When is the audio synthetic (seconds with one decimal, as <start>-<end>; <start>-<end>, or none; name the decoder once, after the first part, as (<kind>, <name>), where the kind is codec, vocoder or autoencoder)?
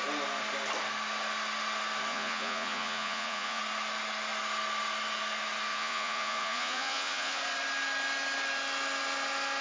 2.1-3.6 (vocoder, Vocos); 5.7-7.4